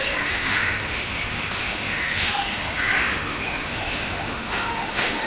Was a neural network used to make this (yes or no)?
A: yes